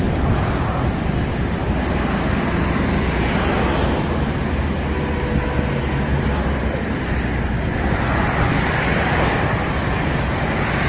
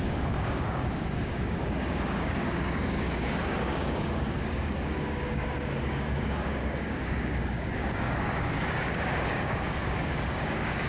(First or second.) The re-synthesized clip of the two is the second